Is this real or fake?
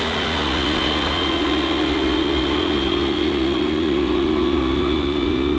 fake